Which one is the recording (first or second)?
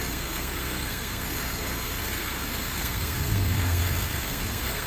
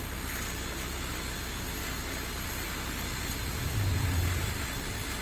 second